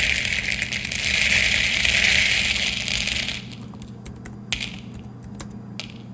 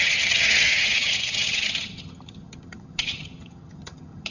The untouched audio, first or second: first